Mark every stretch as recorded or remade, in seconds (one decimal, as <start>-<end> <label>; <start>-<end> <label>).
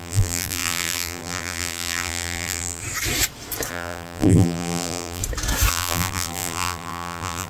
0.0-2.8 remade; 2.8-3.7 recorded; 3.7-5.2 remade; 5.2-5.7 recorded; 5.7-7.5 remade